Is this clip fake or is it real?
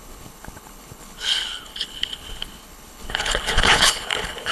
fake